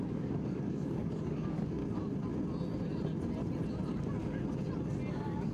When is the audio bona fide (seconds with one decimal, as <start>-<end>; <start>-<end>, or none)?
1.8-5.1